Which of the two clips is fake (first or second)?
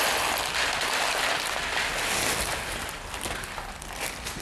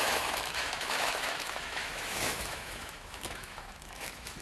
second